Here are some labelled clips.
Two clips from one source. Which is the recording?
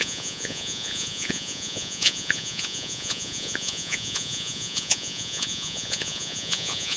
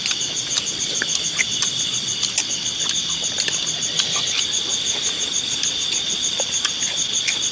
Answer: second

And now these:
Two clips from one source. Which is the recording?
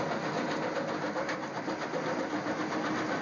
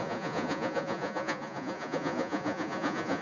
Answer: first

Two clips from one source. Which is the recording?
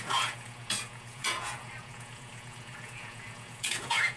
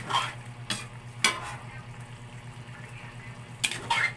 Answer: second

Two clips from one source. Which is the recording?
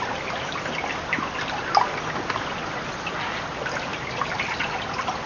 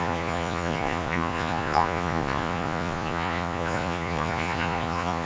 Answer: first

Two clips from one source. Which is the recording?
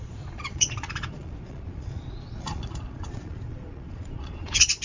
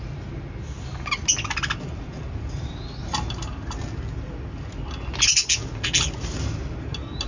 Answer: second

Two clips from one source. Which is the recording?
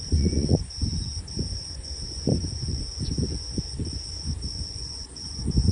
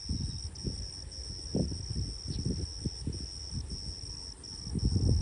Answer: second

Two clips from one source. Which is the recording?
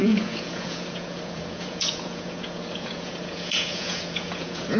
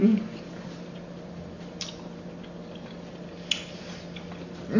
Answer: second